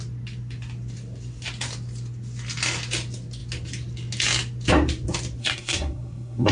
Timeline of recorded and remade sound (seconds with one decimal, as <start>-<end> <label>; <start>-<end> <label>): 0.0-5.4 recorded; 5.4-6.5 remade